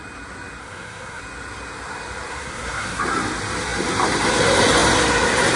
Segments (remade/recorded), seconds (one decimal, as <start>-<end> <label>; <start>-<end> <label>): 0.0-0.6 recorded; 0.6-1.2 remade; 1.2-2.3 recorded; 2.3-3.0 remade; 3.0-5.6 recorded